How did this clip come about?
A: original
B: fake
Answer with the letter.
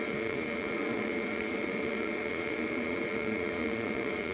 B